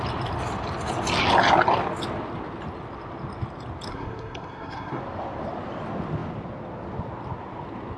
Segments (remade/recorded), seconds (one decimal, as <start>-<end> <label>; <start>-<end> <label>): 0.0-3.9 recorded; 3.9-5.0 remade; 5.0-8.0 recorded